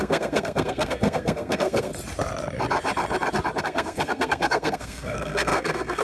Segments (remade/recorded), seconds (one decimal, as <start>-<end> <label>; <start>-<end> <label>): 0.0-1.9 remade; 1.9-3.6 recorded; 3.6-6.0 remade